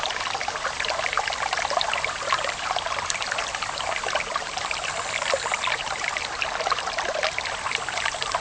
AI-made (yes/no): no